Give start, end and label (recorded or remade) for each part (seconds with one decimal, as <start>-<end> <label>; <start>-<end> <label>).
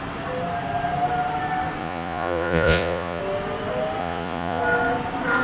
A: 0.0-1.8 recorded; 1.8-3.2 remade; 3.2-4.0 recorded; 4.0-4.6 remade; 4.6-5.4 recorded